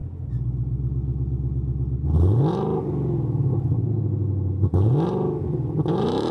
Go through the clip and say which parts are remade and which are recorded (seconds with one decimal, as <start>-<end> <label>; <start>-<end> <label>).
0.0-6.3 recorded